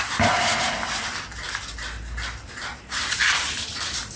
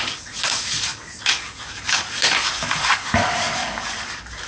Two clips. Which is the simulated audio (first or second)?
second